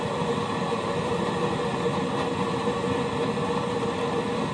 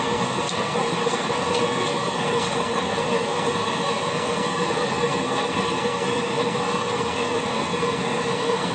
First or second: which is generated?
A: second